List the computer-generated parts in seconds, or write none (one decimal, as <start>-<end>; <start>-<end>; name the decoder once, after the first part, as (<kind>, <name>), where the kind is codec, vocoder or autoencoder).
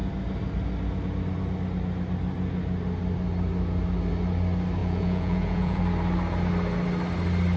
4.8-5.8 (vocoder, Vocos)